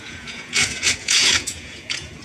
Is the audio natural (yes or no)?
no